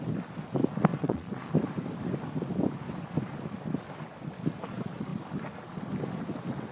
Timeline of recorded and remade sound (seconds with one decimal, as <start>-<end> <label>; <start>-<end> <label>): 0.0-0.9 recorded; 0.9-1.5 remade; 1.5-6.7 recorded